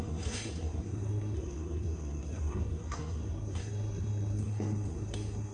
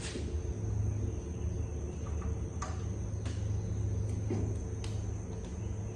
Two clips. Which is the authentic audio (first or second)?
second